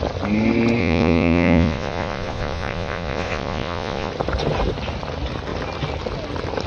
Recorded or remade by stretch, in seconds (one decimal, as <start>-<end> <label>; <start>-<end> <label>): 0.0-0.8 recorded; 0.8-4.1 remade; 4.1-6.7 recorded